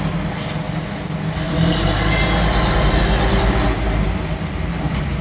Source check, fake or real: real